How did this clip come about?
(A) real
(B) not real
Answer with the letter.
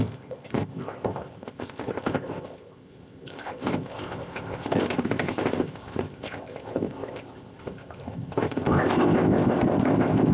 B